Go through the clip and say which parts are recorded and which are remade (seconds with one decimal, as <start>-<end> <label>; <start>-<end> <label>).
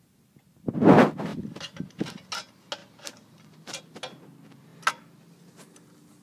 0.0-2.8 recorded; 2.8-3.8 remade; 3.8-6.2 recorded